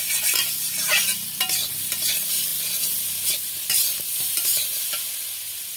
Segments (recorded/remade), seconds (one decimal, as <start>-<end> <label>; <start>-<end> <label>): 0.0-1.1 remade; 1.1-1.7 recorded; 1.7-2.5 remade; 2.5-3.3 recorded; 3.3-5.8 remade